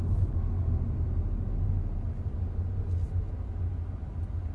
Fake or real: real